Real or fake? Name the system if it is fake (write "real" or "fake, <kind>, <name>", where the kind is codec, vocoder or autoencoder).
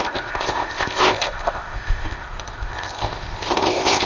fake, codec, ZipCodec